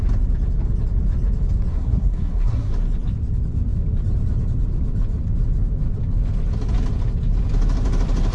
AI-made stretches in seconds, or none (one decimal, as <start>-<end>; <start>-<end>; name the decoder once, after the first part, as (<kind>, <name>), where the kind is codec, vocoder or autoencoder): 1.7-2.7 (codec, SNAC)